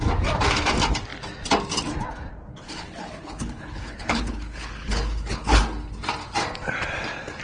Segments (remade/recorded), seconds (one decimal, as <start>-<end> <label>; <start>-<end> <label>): 0.0-2.5 recorded; 2.5-5.6 remade; 5.6-7.4 recorded